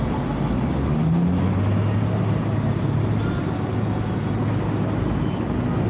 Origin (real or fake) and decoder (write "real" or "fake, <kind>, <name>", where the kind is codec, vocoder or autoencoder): real